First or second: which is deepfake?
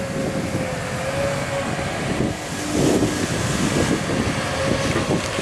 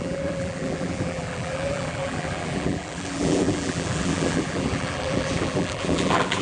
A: second